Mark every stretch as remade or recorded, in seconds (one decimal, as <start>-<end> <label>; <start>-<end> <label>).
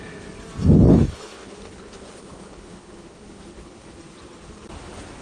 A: 0.0-0.9 recorded; 0.9-4.0 remade; 4.0-5.2 recorded